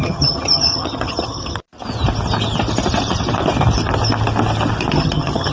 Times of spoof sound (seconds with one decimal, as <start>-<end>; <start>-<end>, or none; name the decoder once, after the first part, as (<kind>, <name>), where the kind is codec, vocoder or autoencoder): 0.0-1.6 (vocoder, HiFi-GAN); 4.9-5.5